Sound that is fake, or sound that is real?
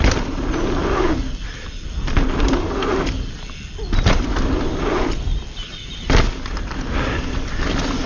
real